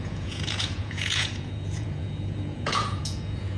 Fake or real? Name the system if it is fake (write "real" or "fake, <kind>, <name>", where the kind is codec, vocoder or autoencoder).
fake, vocoder, Vocos